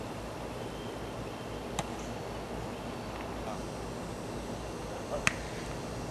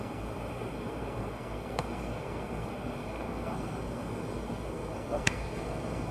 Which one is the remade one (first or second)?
second